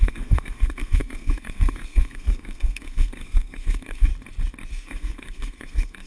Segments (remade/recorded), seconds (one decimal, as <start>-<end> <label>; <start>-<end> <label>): 0.0-4.1 remade; 4.1-4.7 recorded; 4.7-6.1 remade